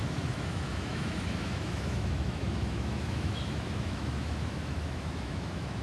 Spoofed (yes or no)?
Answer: yes